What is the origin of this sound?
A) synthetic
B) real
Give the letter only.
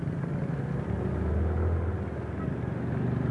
B